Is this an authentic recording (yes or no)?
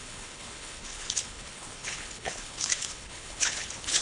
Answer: no